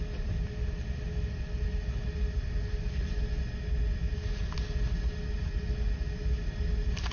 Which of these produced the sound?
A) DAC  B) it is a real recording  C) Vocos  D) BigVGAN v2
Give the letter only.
B